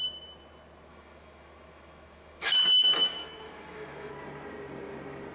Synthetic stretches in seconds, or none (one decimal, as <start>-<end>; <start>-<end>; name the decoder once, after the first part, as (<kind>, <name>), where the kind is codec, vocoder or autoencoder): 0.9-4.1 (autoencoder, DAC-VAE)